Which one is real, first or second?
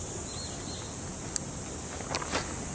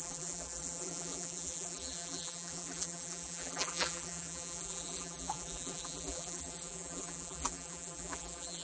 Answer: first